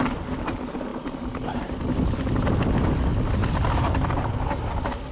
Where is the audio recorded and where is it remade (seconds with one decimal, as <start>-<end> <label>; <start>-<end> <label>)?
0.0-5.1 recorded